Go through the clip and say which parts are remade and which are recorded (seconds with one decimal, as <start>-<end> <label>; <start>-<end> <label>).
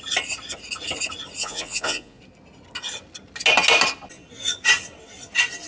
0.0-1.4 recorded; 1.4-2.2 remade; 2.2-5.7 recorded